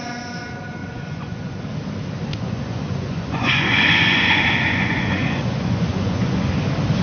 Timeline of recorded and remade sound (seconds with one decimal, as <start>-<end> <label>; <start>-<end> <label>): 0.0-0.8 recorded; 0.8-1.6 remade; 1.6-2.3 recorded; 2.3-6.5 remade; 6.5-7.0 recorded